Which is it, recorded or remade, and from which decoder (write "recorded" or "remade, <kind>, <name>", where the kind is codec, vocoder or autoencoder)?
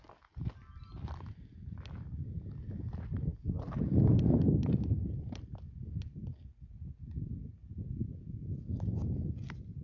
recorded